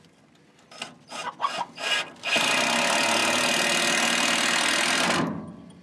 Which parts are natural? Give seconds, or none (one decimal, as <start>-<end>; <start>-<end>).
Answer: 0.0-5.8